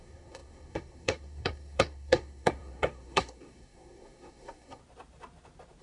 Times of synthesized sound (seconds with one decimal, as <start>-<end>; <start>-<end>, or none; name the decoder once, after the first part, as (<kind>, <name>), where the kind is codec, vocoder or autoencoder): 0.0-4.8 (codec, SNAC)